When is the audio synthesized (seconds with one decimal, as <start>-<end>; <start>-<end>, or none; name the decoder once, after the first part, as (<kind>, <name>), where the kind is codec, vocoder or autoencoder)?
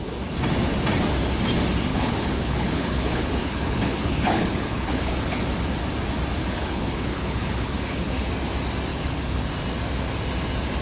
1.9-5.4 (codec, HILCodec); 6.4-8.3; 8.9-9.5